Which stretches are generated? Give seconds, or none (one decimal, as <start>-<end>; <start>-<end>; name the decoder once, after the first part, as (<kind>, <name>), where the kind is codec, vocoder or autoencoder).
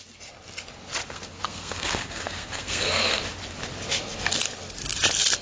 1.0-3.2 (codec, SNAC)